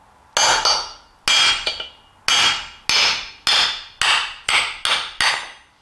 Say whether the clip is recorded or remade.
recorded